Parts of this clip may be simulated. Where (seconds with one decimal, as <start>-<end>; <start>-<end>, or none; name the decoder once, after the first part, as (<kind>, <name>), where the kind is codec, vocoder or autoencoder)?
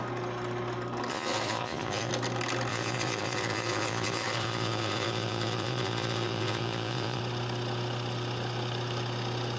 1.1-2.1 (vocoder, Vocos); 2.7-7.2